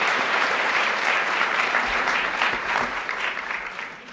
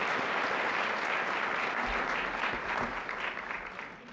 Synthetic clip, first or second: first